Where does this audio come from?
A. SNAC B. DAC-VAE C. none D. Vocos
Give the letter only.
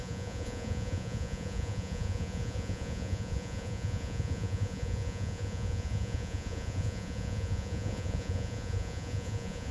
D